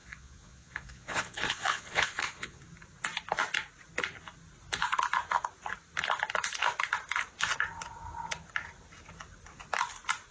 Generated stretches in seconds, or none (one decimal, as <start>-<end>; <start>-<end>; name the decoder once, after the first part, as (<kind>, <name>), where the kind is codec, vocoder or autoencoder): 0.0-2.6 (vocoder, Vocos)